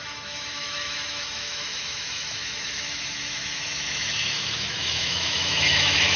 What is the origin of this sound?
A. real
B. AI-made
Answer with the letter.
B